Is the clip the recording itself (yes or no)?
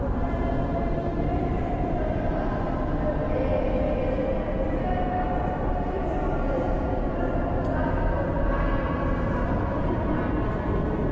yes